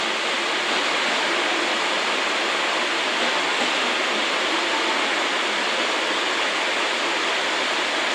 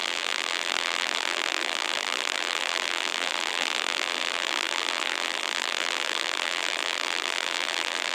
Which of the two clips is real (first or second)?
first